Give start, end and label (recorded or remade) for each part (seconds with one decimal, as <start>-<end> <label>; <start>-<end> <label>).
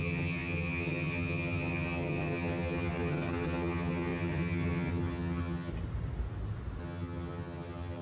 0.0-5.7 remade; 5.7-6.8 recorded; 6.8-8.0 remade